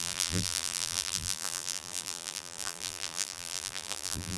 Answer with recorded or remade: remade